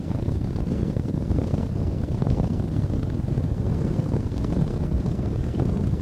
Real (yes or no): no